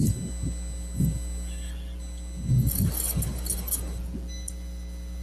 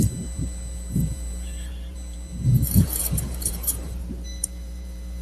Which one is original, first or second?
first